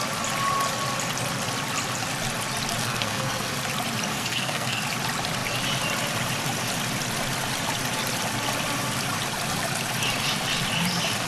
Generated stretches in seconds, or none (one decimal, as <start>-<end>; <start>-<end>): 2.8-3.5; 4.1-4.8